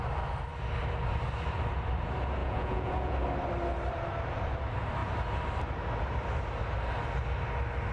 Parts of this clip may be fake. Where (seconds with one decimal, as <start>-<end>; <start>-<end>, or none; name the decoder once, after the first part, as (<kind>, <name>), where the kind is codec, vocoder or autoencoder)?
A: 2.4-3.2 (vocoder, Vocos)